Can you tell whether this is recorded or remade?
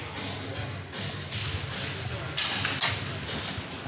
recorded